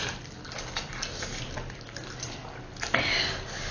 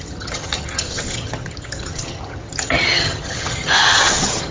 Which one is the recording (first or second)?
first